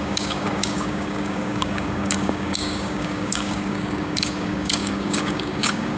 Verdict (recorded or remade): remade